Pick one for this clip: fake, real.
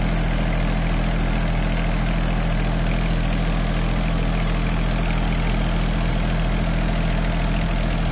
real